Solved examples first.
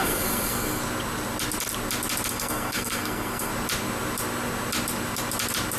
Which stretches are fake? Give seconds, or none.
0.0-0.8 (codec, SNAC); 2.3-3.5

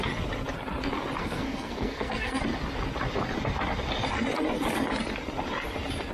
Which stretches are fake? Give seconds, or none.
1.2-2.4 (codec, SNAC)